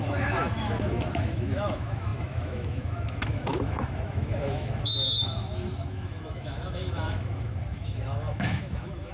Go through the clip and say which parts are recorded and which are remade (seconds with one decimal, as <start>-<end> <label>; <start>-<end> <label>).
0.0-9.1 remade